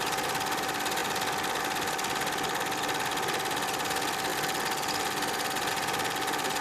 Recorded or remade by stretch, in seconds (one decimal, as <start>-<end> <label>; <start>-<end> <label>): 0.0-6.6 recorded